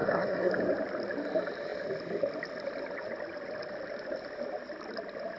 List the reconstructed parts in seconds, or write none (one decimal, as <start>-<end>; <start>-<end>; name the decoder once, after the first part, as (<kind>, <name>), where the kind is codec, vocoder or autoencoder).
0.0-0.5 (codec, SNAC)